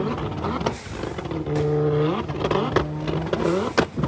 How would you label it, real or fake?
real